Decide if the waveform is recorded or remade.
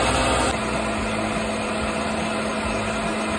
recorded